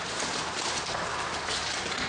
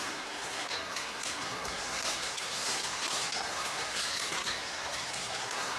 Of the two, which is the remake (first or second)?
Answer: second